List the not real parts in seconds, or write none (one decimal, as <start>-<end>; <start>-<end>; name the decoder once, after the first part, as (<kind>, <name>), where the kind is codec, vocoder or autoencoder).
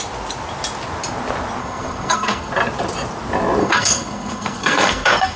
1.6-2.5 (codec, SNAC); 3.6-5.4